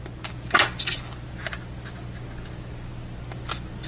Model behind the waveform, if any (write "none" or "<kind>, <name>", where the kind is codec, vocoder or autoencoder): none